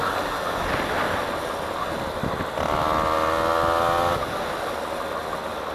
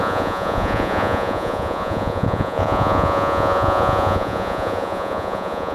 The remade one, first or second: second